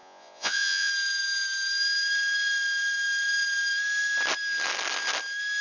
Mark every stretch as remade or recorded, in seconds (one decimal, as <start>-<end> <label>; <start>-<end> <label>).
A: 0.0-0.9 remade; 0.9-5.6 recorded